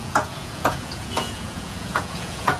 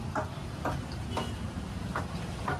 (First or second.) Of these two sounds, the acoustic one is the second